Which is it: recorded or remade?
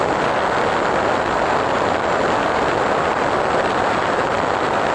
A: recorded